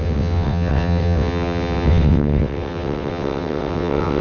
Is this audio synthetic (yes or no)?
yes